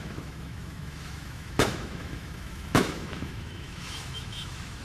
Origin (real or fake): fake